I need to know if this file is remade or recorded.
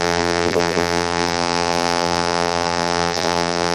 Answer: remade